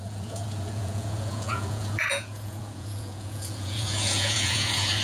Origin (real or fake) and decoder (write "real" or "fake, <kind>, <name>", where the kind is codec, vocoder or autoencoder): fake, vocoder, Vocos